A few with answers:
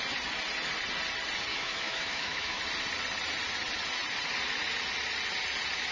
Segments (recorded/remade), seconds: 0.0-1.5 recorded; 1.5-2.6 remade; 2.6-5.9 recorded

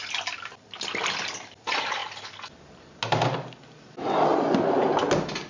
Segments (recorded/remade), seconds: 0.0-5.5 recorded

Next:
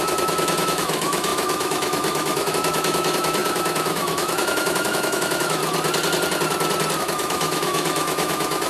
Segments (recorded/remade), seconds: 0.0-5.6 remade; 5.6-7.0 recorded; 7.0-8.7 remade

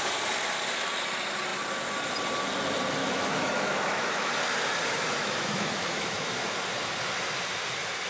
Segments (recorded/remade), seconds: 0.0-3.0 recorded; 3.0-4.3 remade; 4.3-5.2 recorded; 5.2-6.3 remade; 6.3-8.1 recorded

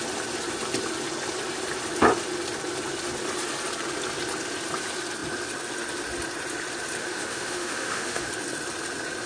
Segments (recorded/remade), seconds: 0.0-7.0 recorded; 7.0-8.3 remade; 8.3-9.3 recorded